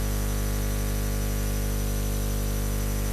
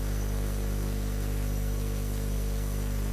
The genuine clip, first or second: first